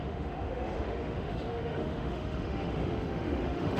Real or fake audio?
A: fake